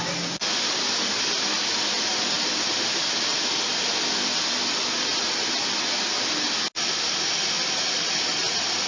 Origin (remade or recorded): recorded